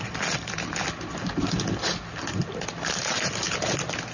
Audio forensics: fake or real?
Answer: fake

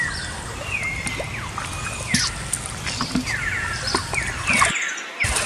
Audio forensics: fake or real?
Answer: real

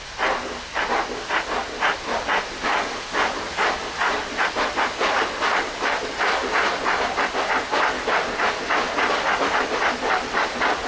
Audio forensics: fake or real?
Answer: real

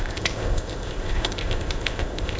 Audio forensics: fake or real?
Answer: fake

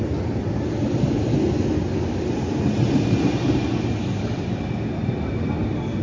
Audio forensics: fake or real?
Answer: real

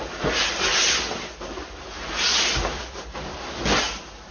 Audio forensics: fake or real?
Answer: real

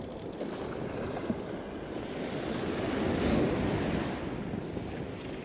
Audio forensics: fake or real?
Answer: real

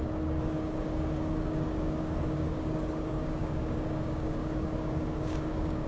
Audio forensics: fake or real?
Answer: fake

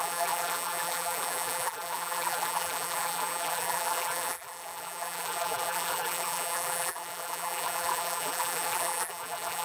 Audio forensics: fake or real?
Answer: fake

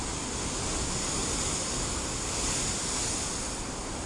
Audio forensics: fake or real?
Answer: real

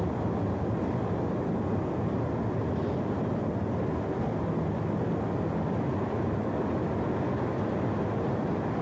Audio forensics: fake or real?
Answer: real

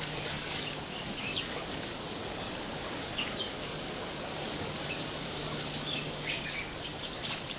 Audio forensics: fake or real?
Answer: fake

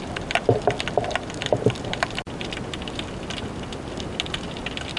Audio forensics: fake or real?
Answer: real